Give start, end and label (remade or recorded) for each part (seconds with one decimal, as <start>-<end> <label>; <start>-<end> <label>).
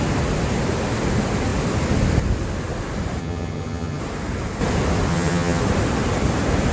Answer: 0.0-3.2 recorded; 3.2-4.0 remade; 4.0-5.1 recorded; 5.1-5.6 remade; 5.6-6.7 recorded